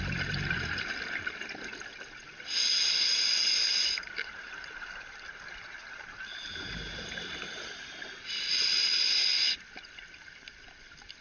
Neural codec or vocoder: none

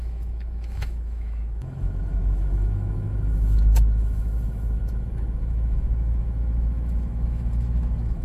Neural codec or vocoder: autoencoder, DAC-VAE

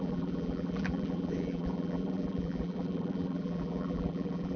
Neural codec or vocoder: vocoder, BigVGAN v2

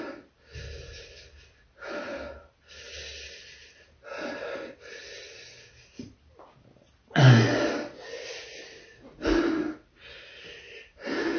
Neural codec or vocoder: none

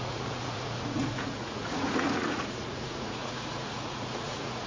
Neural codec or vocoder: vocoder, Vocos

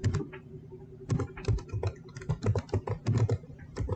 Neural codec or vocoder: vocoder, BigVGAN v2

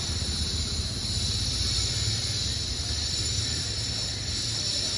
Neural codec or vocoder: vocoder, BigVGAN v2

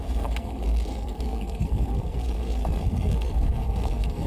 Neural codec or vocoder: codec, SNAC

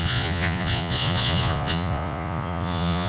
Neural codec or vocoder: vocoder, Vocos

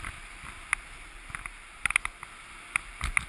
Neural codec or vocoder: none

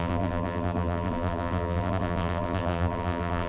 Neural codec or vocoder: vocoder, BigVGAN v2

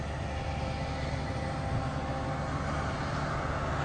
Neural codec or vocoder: none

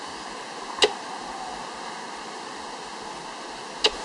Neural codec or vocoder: none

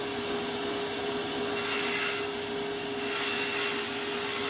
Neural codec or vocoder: none